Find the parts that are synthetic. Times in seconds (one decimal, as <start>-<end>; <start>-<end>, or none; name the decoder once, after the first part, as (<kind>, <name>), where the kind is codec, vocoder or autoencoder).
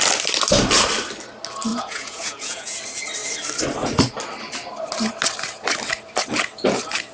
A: 1.7-2.8 (vocoder, Vocos)